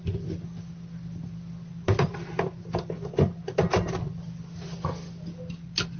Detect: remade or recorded recorded